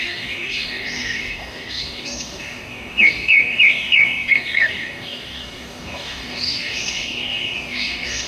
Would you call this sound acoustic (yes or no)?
no